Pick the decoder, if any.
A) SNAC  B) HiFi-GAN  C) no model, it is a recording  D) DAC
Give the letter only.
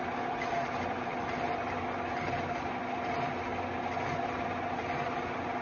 C